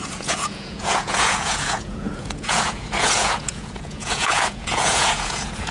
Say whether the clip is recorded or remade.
remade